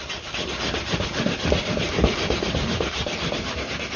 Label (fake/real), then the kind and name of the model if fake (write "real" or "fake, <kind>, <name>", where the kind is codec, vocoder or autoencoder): fake, vocoder, BigVGAN v2